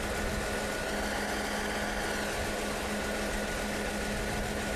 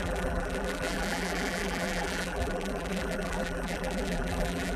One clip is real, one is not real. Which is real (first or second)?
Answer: first